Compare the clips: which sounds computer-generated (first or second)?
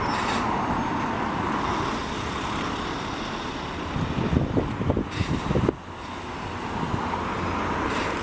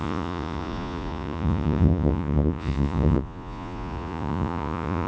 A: second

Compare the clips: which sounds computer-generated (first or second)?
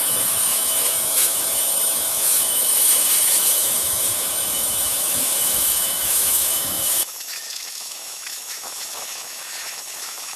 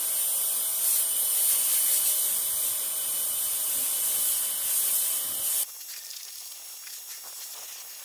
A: first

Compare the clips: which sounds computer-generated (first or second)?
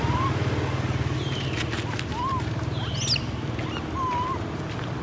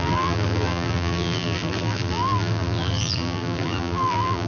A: second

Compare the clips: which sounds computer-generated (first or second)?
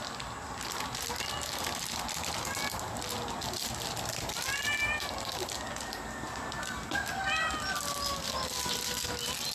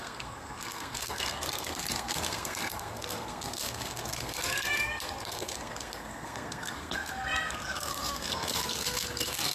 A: second